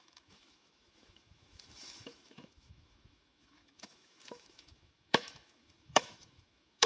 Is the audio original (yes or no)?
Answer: no